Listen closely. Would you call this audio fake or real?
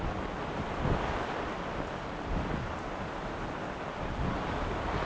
real